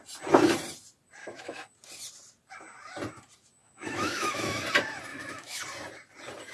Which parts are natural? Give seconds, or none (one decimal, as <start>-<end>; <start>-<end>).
0.0-1.2; 1.7-3.6; 4.6-5.1; 5.6-6.5